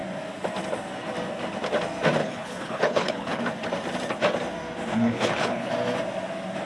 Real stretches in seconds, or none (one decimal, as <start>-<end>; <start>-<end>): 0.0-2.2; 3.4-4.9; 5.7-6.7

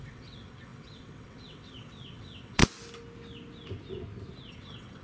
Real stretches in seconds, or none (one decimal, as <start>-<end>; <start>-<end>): 2.6-4.5

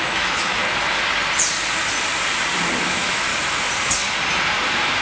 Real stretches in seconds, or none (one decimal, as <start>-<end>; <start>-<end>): 0.6-2.8; 3.3-5.0

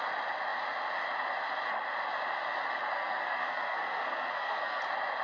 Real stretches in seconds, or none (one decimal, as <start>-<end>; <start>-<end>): 0.0-2.9; 4.8-5.2

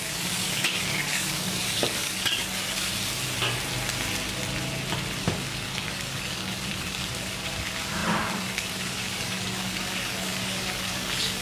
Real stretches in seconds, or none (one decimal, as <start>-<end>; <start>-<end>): 2.9-5.2